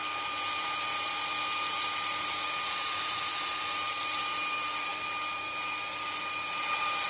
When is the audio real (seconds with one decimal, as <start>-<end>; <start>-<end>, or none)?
0.9-3.0; 4.9-7.1